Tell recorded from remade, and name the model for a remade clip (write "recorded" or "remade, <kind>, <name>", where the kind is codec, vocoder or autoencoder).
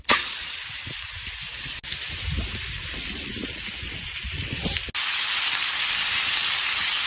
recorded